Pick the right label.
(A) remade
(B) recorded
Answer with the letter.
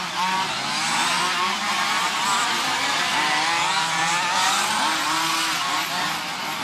B